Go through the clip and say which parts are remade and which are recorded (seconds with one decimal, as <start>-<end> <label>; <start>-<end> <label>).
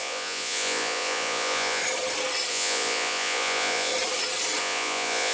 0.0-1.8 remade; 1.8-2.5 recorded; 2.5-3.9 remade; 3.9-4.6 recorded; 4.6-5.3 remade